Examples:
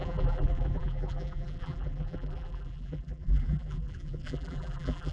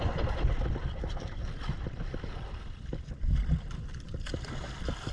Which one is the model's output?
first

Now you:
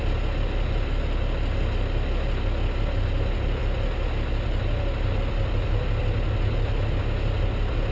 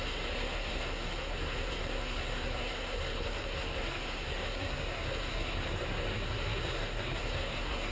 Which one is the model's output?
second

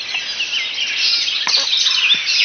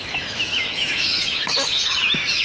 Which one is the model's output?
second